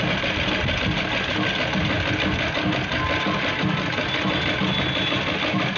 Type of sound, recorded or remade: recorded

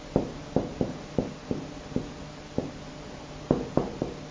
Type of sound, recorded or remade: recorded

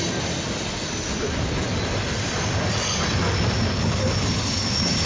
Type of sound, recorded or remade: remade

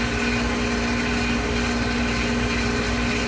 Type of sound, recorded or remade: recorded